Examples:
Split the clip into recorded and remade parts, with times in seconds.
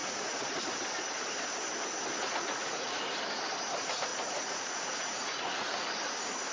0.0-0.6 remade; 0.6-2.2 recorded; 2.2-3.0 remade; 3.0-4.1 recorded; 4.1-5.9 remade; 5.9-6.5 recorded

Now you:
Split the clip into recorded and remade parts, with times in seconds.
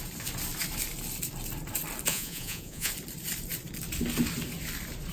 0.0-2.1 recorded; 2.1-2.9 remade; 2.9-5.1 recorded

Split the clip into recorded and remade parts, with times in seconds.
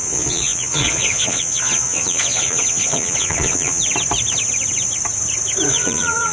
0.0-3.8 remade; 3.8-5.7 recorded; 5.7-6.3 remade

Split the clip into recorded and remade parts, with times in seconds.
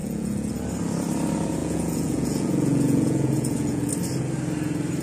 0.0-0.5 remade; 0.5-1.6 recorded; 1.6-3.9 remade; 3.9-5.0 recorded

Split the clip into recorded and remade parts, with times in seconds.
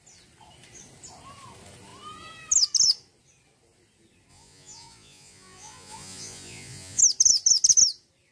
0.0-4.3 recorded; 4.3-7.0 remade; 7.0-8.3 recorded